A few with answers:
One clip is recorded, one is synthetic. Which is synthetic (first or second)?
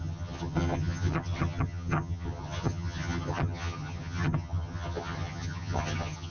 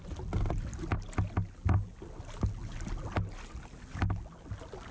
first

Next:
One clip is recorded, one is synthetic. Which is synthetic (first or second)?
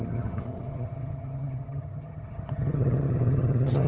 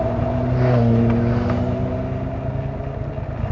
first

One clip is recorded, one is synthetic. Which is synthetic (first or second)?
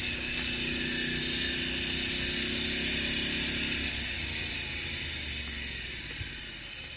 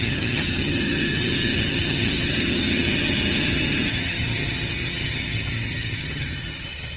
second